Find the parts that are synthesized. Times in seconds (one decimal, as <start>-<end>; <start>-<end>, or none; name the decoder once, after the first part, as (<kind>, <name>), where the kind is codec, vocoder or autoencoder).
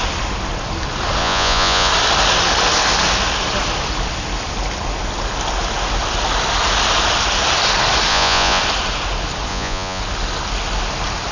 1.2-1.9 (vocoder, Vocos); 8.1-8.6; 9.5-10.0